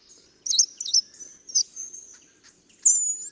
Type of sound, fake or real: real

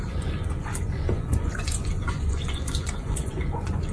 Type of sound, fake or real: fake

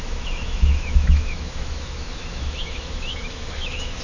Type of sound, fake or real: fake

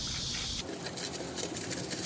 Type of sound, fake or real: real